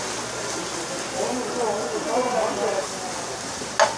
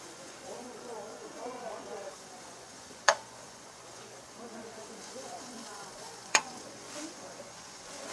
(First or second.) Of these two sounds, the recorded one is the first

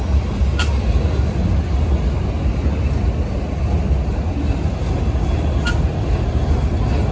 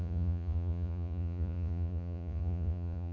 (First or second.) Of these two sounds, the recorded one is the first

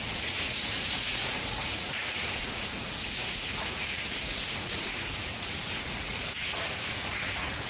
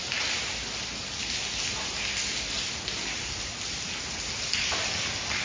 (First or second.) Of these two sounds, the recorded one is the second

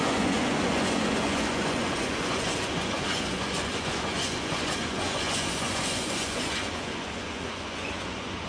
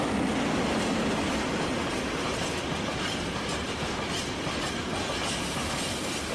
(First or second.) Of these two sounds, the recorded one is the second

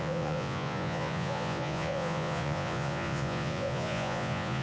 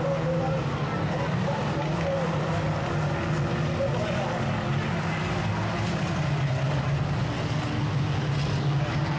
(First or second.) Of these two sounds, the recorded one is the second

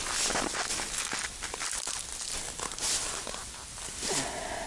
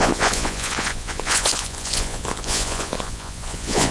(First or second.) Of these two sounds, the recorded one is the first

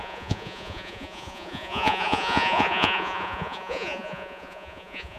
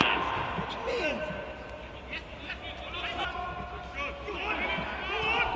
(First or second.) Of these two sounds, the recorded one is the second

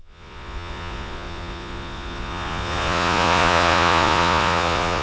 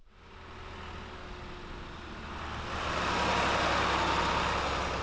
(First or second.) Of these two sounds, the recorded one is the second